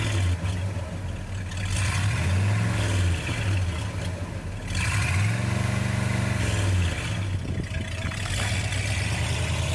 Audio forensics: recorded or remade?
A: recorded